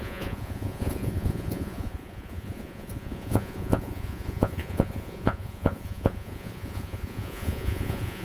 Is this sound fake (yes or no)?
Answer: yes